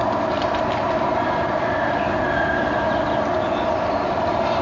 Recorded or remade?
recorded